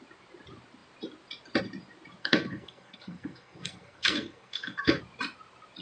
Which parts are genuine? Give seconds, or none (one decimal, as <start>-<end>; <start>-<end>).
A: 0.0-2.2; 5.0-5.8